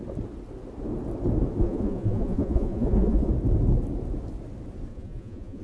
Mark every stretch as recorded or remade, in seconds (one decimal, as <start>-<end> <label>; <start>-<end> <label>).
0.0-1.6 recorded; 1.6-3.3 remade; 3.3-4.9 recorded; 4.9-5.6 remade